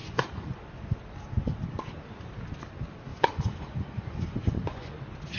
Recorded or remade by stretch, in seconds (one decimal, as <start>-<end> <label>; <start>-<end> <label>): 0.0-0.6 remade; 0.6-3.1 recorded; 3.1-5.0 remade; 5.0-5.4 recorded